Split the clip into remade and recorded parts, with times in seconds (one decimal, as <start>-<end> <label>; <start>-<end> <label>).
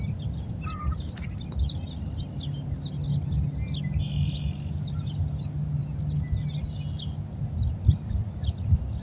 0.0-9.0 recorded